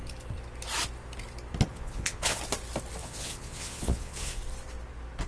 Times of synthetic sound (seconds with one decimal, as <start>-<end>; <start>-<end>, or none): 1.7-2.4; 3.0-4.4